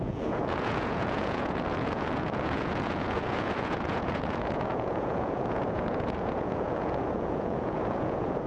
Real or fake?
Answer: fake